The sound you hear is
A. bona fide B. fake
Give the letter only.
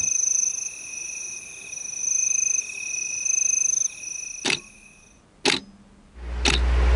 A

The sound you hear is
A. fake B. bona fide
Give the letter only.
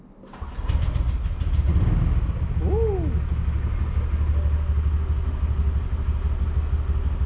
B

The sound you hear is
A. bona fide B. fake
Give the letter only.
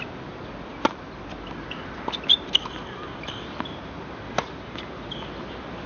A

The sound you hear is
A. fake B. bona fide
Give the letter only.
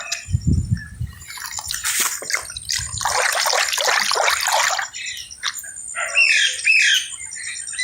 B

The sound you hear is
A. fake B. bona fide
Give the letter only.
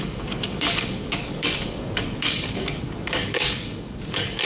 A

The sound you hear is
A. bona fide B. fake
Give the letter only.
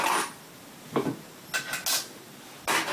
A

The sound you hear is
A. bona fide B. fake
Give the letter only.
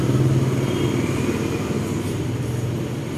A